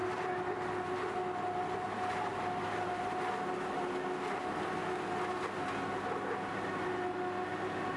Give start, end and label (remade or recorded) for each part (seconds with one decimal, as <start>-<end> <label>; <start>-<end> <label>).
0.0-8.0 recorded